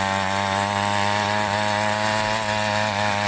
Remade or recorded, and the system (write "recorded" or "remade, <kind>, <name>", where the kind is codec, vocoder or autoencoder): recorded